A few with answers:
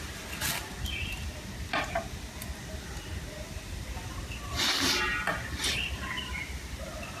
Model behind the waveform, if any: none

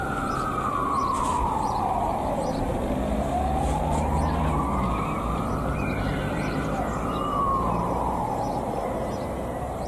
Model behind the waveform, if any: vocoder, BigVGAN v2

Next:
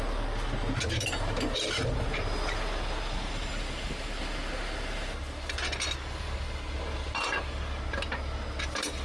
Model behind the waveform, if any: none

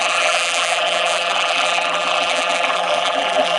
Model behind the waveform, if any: vocoder, BigVGAN v2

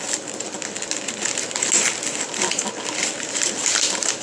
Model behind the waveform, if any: none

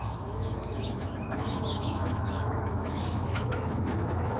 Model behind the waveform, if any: autoencoder, DAC-VAE